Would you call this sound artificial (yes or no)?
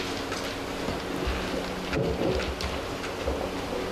no